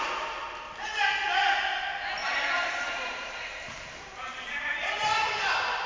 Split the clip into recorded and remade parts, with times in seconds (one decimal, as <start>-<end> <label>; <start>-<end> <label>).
0.0-0.4 remade; 0.4-1.9 recorded; 1.9-5.9 remade